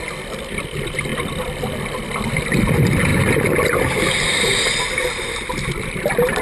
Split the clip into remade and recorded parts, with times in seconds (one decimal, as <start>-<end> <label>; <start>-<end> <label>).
0.0-1.1 recorded; 1.1-1.9 remade; 1.9-3.1 recorded; 3.1-4.6 remade; 4.6-6.4 recorded